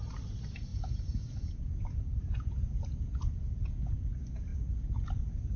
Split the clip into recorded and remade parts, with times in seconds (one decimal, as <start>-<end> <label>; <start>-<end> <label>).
0.0-0.7 recorded; 0.7-4.1 remade; 4.1-4.5 recorded; 4.5-5.6 remade